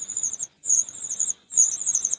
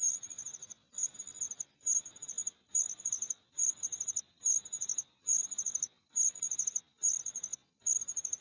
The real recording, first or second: second